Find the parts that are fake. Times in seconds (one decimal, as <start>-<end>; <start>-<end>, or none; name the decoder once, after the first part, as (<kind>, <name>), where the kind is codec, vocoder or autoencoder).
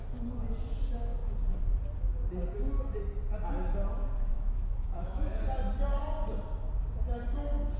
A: 4.3-5.2 (autoencoder, DAC-VAE)